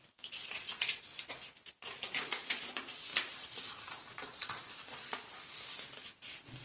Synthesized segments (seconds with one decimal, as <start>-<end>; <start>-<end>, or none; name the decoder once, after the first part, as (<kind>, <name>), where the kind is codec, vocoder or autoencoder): 0.0-1.1 (vocoder, Vocos); 1.7-3.1; 3.7-5.3